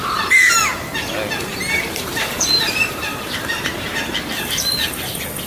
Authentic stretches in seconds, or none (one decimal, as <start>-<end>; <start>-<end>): 0.0-1.5; 3.9-5.5